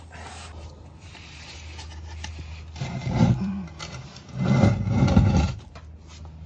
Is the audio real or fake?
real